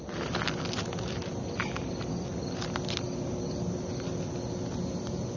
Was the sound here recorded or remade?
recorded